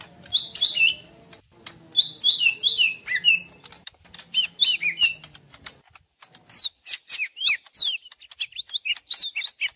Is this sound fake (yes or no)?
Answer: no